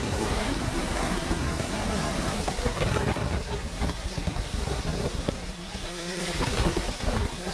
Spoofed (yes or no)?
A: yes